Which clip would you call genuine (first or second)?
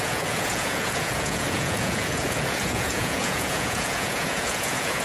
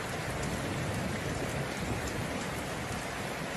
second